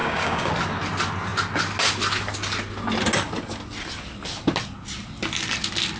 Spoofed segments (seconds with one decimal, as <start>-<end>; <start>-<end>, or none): 0.0-0.5